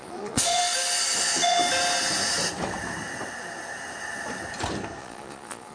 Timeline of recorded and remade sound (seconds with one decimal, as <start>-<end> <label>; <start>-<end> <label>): 0.0-0.6 remade; 0.6-1.2 recorded; 1.2-1.6 remade; 1.6-5.0 recorded; 5.0-5.7 remade